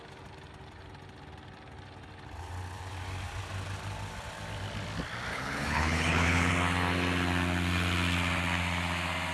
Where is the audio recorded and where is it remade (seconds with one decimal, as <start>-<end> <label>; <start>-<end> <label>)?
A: 0.0-5.3 recorded; 5.3-6.5 remade; 6.5-9.3 recorded